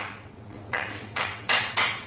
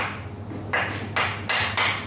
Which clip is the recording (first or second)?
second